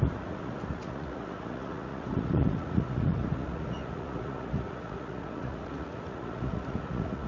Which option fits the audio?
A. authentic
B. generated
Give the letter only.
B